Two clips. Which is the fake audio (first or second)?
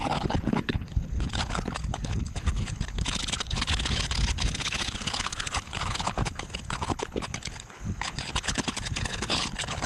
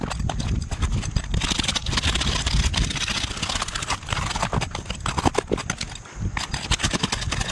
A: first